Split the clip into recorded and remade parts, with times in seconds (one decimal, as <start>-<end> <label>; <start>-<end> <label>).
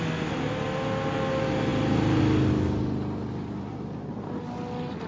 0.0-5.1 recorded